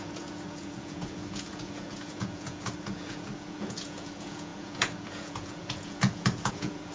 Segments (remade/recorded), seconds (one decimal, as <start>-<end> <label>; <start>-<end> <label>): 0.0-6.9 remade

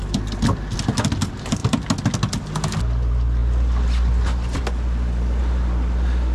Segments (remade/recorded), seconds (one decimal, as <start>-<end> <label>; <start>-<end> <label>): 0.0-6.3 recorded

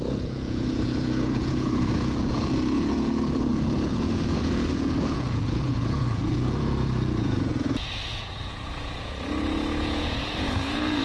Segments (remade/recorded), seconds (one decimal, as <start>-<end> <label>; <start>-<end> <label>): 0.0-11.0 remade

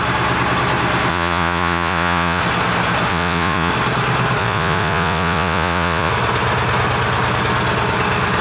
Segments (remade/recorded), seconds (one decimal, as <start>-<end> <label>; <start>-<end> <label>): 0.0-1.1 recorded; 1.1-2.4 remade; 2.4-3.1 recorded; 3.1-3.7 remade; 3.7-4.4 recorded; 4.4-6.1 remade; 6.1-8.4 recorded

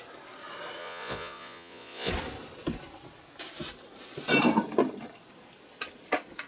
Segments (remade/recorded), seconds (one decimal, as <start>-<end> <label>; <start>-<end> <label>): 0.0-0.8 recorded; 0.8-2.1 remade; 2.1-6.5 recorded

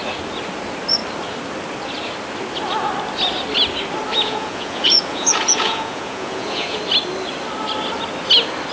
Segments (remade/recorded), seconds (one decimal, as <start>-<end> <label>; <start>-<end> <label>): 0.0-4.1 recorded; 4.1-6.8 remade; 6.8-8.7 recorded